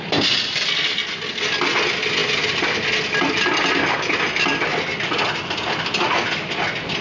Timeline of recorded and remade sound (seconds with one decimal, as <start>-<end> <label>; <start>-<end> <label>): 0.0-7.0 recorded